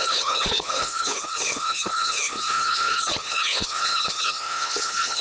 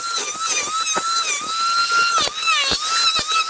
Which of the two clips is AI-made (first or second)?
first